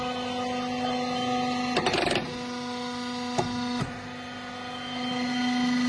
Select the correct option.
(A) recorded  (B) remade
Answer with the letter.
A